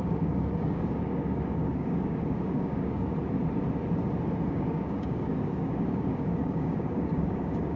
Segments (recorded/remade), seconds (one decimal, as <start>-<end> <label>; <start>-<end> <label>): 0.0-3.1 remade; 3.1-4.5 recorded; 4.5-7.8 remade